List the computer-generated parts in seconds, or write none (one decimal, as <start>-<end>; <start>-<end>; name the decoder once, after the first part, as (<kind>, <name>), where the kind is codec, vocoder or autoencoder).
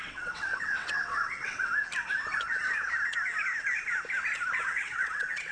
0.0-1.7 (vocoder, WaveNeXt); 4.6-5.5